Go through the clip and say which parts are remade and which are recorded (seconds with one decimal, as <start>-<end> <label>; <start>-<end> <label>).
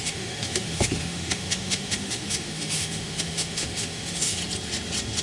0.0-4.4 remade; 4.4-5.2 recorded